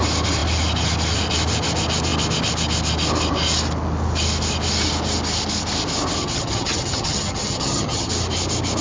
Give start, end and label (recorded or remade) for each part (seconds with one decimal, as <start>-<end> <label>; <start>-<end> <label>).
0.0-6.2 recorded; 6.2-8.1 remade; 8.1-8.8 recorded